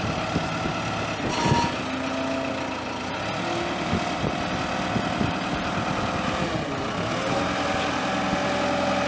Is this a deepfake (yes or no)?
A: no